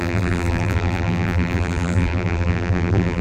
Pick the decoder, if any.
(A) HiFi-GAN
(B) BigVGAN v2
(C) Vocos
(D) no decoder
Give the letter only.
B